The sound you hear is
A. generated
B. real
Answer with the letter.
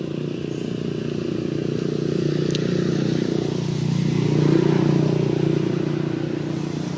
B